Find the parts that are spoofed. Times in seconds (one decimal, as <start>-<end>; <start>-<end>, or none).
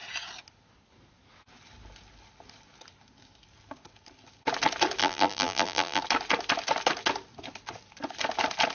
5.0-6.0